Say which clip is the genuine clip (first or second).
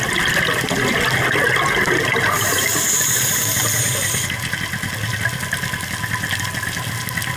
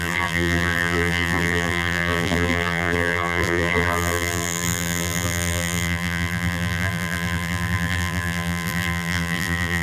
first